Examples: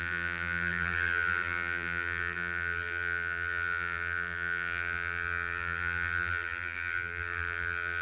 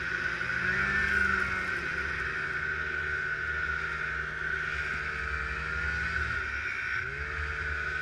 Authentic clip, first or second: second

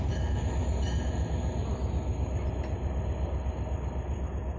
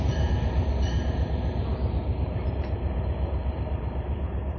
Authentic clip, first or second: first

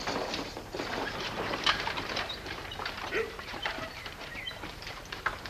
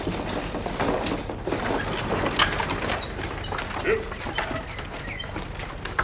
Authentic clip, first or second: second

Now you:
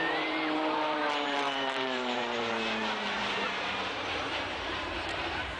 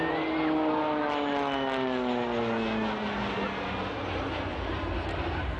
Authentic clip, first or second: second